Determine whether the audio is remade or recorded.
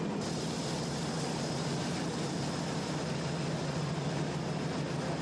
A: recorded